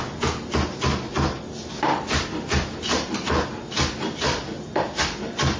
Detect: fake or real real